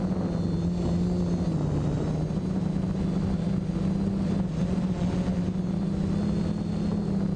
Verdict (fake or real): real